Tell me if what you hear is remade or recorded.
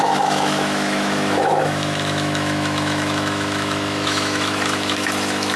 remade